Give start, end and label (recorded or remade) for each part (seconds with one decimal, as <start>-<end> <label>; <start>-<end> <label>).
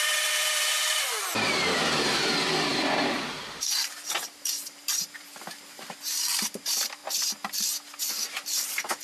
0.0-7.0 remade; 7.0-8.0 recorded; 8.0-9.0 remade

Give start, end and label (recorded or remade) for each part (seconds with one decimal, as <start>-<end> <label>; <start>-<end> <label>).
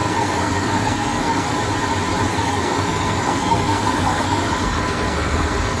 0.0-1.5 remade; 1.5-2.3 recorded; 2.3-5.8 remade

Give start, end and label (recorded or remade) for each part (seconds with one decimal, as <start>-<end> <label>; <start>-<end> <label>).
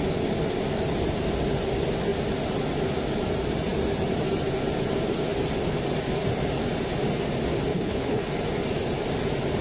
0.0-7.7 recorded; 7.7-8.3 remade; 8.3-9.6 recorded